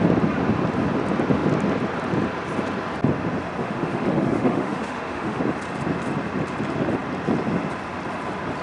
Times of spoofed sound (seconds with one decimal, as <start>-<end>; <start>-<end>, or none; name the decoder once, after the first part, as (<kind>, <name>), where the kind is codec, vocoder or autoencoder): 3.6-5.4 (autoencoder, DAC-VAE)